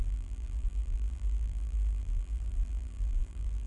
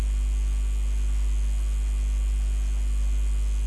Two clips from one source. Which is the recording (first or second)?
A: second